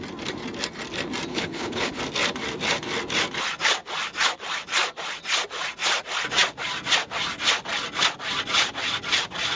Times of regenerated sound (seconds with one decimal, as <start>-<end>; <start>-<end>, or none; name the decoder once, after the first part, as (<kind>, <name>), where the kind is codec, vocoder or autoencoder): 1.3-2.0 (codec, HILCodec)